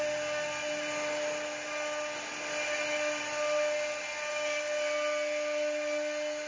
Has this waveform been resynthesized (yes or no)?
no